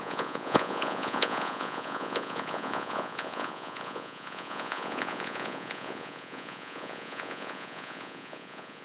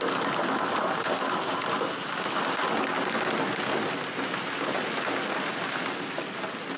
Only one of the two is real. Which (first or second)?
second